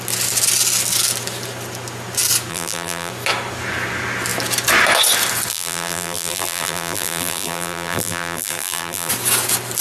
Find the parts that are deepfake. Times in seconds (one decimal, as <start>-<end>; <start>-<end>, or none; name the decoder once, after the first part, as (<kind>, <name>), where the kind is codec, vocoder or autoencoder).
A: 2.5-3.1 (vocoder, BigVGAN v2); 5.5-9.1